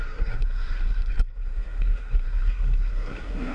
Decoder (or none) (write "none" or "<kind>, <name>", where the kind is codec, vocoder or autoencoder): codec, SNAC